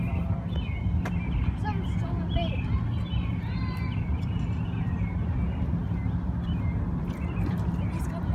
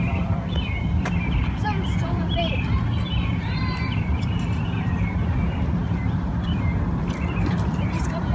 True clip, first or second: first